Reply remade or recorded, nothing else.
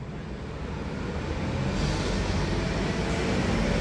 recorded